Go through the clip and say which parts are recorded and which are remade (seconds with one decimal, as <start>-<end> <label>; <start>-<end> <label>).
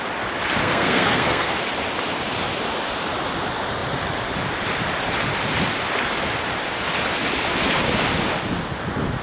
0.0-0.6 recorded; 0.6-1.5 remade; 1.5-9.2 recorded